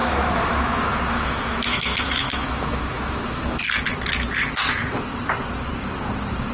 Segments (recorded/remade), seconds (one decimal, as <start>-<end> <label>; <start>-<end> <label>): 0.0-3.6 remade; 3.6-6.5 recorded